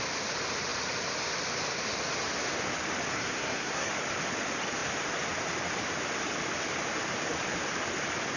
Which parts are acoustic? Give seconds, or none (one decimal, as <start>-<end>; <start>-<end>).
0.0-3.1; 3.9-8.4